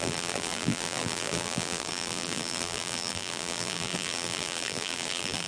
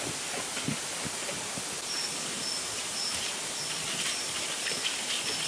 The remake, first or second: first